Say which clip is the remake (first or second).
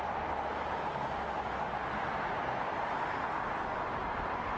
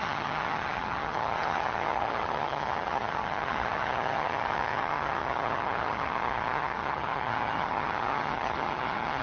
second